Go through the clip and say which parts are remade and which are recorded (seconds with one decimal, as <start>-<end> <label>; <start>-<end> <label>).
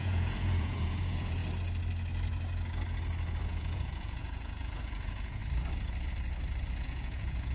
0.0-1.4 remade; 1.4-3.4 recorded; 3.4-5.4 remade; 5.4-6.7 recorded; 6.7-7.5 remade